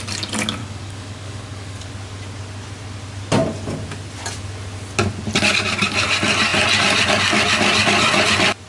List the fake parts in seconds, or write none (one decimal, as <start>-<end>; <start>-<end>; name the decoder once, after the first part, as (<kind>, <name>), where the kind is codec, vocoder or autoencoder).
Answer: 0.6-1.9 (codec, DAC)